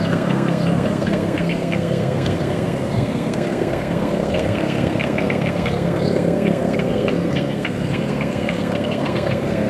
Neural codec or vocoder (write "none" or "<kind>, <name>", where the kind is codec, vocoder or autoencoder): codec, SNAC